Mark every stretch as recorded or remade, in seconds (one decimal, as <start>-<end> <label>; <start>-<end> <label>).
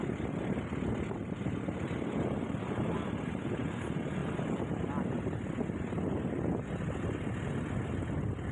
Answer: 0.0-8.5 recorded